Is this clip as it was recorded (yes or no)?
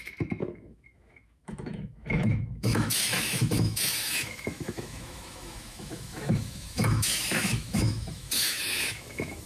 no